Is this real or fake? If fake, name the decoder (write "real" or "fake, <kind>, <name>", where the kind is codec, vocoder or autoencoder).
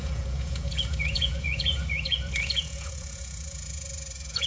fake, vocoder, Vocos